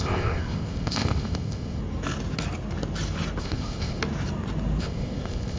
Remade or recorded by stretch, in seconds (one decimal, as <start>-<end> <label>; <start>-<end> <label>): 0.0-1.8 remade; 1.8-3.4 recorded; 3.4-4.0 remade; 4.0-4.8 recorded; 4.8-5.6 remade